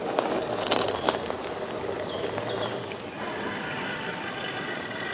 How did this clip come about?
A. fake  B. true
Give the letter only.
A